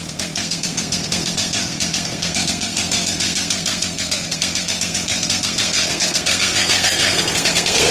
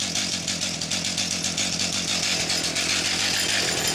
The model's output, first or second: first